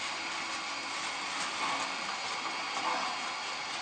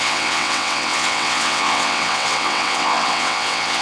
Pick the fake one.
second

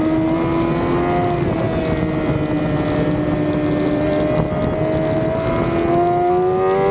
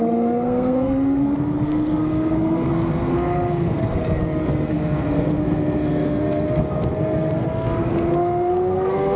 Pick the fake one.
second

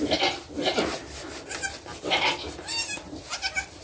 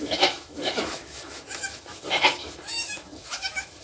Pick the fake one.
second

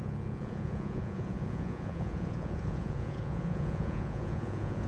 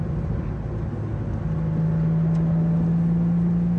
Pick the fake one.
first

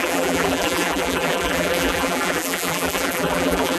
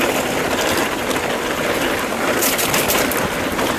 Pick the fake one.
first